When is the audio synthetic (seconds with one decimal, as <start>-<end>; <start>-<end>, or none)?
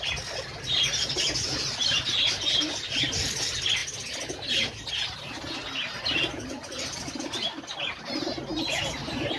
none